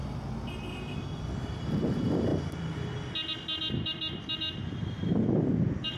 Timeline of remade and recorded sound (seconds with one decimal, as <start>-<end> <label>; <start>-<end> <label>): 0.0-6.0 recorded